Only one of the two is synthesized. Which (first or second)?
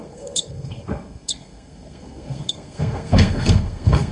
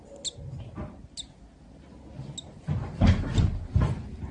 first